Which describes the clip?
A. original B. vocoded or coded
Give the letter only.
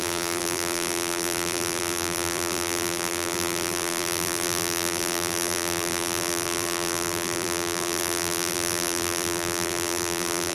B